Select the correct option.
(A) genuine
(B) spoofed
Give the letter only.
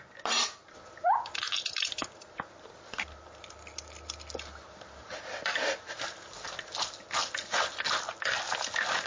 A